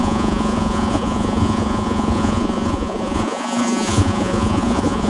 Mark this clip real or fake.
fake